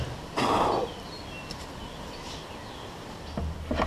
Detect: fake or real real